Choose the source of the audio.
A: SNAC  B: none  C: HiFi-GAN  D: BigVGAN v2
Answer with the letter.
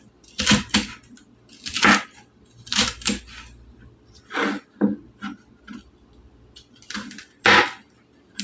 B